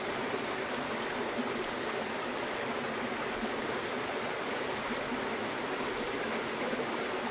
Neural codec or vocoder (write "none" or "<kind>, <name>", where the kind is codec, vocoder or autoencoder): none